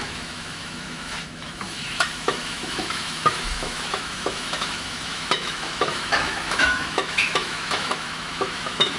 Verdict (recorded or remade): remade